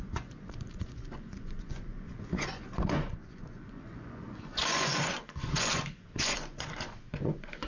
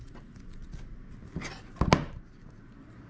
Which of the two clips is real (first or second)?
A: second